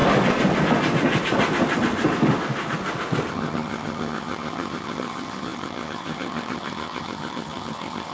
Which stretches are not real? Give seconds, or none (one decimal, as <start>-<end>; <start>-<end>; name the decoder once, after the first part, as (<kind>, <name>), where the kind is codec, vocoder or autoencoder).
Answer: 3.3-8.1 (vocoder, HiFi-GAN)